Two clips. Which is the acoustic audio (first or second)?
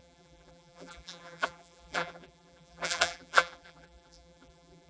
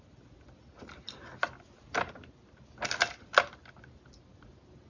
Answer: second